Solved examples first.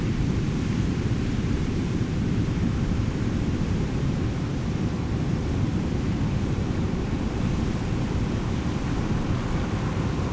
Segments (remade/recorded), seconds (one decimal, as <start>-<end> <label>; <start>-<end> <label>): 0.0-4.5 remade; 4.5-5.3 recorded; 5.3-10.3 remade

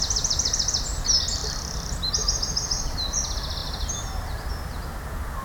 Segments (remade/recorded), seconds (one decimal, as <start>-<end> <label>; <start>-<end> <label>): 0.0-1.4 recorded; 1.4-2.1 remade; 2.1-3.6 recorded; 3.6-4.5 remade; 4.5-5.4 recorded

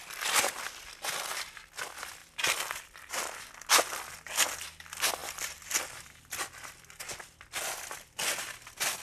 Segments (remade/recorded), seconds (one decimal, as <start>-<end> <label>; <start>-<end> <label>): 0.0-2.2 recorded; 2.2-3.4 remade; 3.4-5.2 recorded; 5.2-7.4 remade; 7.4-9.0 recorded

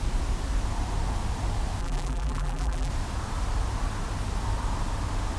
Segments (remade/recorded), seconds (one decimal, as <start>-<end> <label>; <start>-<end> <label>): 0.0-1.8 recorded; 1.8-2.9 remade; 2.9-5.4 recorded

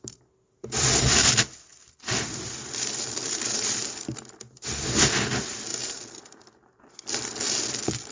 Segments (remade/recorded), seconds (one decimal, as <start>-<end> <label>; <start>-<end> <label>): 0.0-1.7 recorded; 1.7-4.4 remade; 4.4-5.7 recorded; 5.7-6.8 remade; 6.8-8.1 recorded